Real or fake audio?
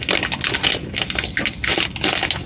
real